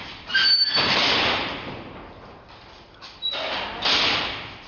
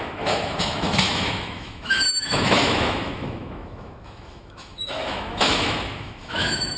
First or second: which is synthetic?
second